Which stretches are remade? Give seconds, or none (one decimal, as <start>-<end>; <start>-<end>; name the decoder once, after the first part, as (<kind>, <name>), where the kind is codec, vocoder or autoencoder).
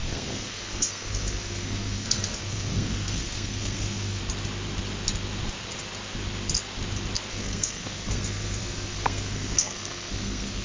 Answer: 0.0-4.2 (codec, SNAC); 7.3-10.6